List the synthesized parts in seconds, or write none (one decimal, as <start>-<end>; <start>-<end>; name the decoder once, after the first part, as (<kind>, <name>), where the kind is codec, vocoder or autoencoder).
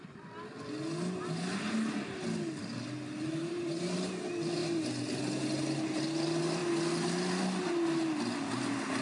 3.4-4.1 (vocoder, BigVGAN v2); 4.6-6.0